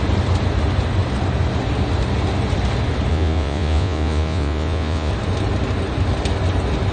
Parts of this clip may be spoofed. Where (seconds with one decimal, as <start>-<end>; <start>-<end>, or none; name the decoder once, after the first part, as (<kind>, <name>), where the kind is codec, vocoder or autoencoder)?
3.1-5.1 (vocoder, Vocos)